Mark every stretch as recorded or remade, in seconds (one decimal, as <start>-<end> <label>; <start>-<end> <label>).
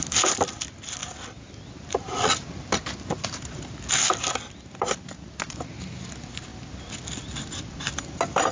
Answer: 0.0-8.5 recorded